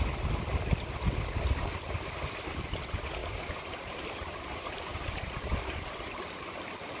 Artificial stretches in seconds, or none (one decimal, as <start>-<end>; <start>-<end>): 3.2-5.6